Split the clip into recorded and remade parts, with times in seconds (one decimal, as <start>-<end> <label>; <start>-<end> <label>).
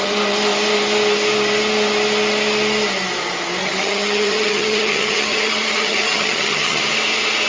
0.0-3.6 recorded; 3.6-6.8 remade; 6.8-7.5 recorded